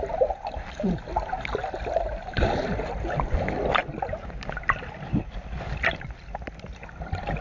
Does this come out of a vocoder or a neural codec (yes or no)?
no